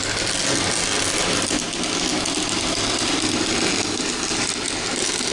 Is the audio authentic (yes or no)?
yes